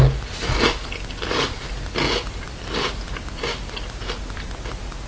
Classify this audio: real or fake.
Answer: real